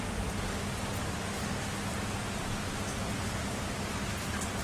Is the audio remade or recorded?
recorded